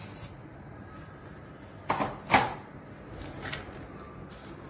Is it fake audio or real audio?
real